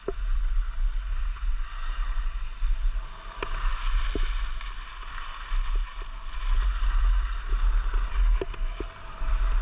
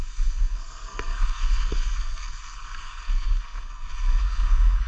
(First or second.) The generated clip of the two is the second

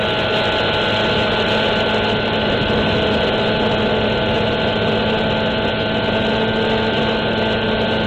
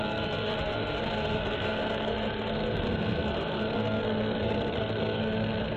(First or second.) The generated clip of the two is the second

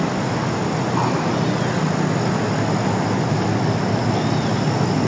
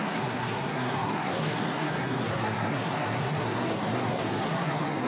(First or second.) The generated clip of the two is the second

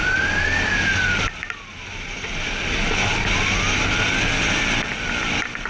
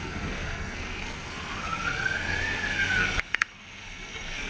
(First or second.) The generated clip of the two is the second